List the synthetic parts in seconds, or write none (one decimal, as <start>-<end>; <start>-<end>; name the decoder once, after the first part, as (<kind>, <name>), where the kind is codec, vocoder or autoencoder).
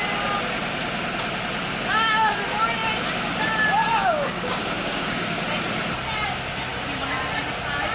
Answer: 3.9-5.4 (codec, DAC)